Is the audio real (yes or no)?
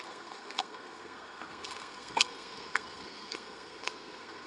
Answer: no